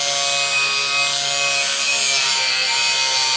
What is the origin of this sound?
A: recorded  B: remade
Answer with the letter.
A